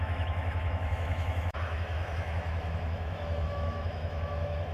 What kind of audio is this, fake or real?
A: fake